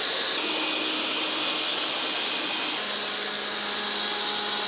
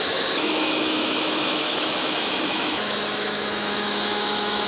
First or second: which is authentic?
first